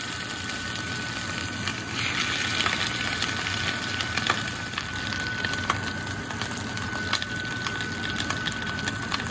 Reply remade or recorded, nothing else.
recorded